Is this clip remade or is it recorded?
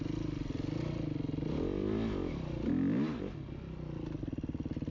recorded